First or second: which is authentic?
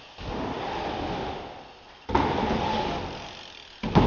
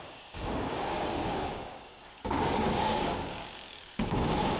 first